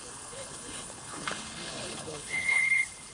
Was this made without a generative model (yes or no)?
no